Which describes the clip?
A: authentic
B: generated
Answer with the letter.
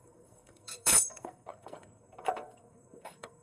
B